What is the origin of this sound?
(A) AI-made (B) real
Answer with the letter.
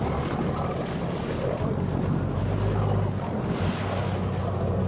B